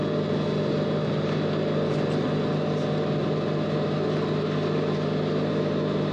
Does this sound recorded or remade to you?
recorded